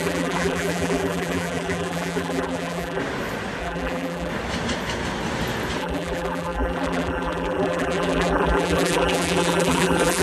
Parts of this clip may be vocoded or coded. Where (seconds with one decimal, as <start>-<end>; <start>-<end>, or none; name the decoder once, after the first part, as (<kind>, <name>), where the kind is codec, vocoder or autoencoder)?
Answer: 0.0-3.0 (vocoder, BigVGAN v2); 3.6-4.3; 5.8-10.2